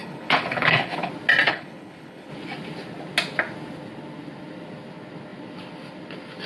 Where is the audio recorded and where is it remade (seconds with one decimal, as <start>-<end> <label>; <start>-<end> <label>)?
0.0-1.1 remade; 1.1-1.5 recorded; 1.5-2.3 remade; 2.3-6.5 recorded